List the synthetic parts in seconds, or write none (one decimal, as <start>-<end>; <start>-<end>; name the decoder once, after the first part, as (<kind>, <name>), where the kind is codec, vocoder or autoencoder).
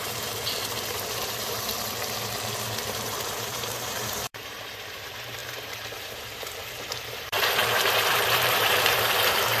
0.0-1.7 (vocoder, BigVGAN v2); 2.8-9.6